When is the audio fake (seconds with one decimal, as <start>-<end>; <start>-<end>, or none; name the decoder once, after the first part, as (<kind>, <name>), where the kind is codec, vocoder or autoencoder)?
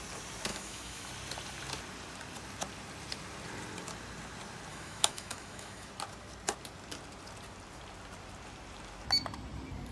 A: 0.5-1.1 (autoencoder, DAC-VAE); 4.7-5.9